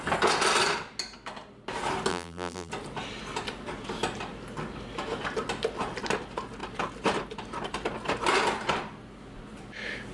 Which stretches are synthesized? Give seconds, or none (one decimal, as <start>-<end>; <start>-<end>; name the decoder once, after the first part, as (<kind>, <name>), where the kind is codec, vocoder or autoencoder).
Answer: 2.1-2.7 (vocoder, BigVGAN v2)